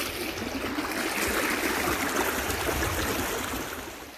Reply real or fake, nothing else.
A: real